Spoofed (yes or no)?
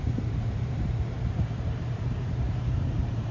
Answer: yes